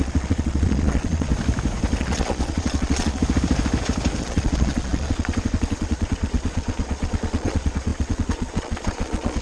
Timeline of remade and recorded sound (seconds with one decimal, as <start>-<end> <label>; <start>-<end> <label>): 0.0-1.3 remade; 1.3-2.0 recorded; 2.0-3.2 remade; 3.2-4.2 recorded; 4.2-9.4 remade